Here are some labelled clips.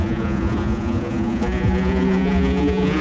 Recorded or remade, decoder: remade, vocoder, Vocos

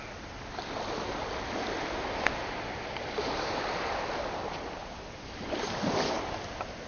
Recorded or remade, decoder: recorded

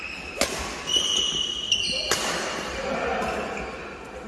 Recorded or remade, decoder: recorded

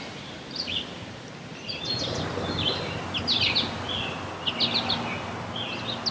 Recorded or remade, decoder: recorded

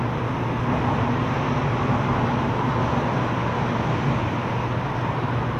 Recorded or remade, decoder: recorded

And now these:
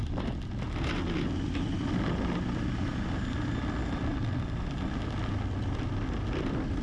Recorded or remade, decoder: recorded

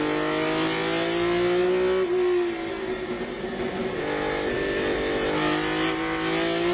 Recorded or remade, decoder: recorded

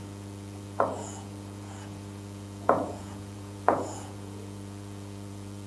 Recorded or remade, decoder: remade, vocoder, Vocos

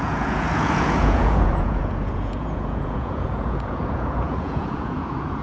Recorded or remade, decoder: remade, vocoder, Vocos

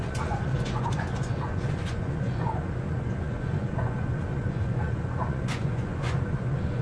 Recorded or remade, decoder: remade, vocoder, Vocos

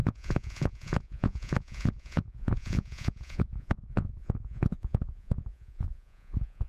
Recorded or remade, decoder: remade, vocoder, Vocos